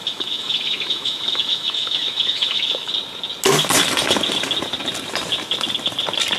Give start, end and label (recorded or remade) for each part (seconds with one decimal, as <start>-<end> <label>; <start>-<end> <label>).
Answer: 0.0-2.9 remade; 2.9-6.4 recorded